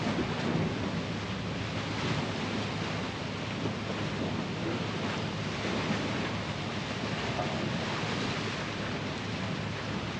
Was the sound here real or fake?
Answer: real